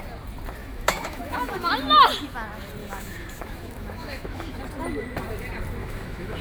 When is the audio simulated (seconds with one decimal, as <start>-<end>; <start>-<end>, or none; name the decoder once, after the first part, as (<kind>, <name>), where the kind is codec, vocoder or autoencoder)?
0.6-1.7 (autoencoder, DAC-VAE); 2.8-4.6; 5.8-6.4